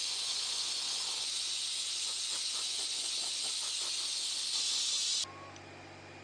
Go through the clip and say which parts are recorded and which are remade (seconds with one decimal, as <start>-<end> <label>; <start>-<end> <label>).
0.0-3.1 remade; 3.1-6.2 recorded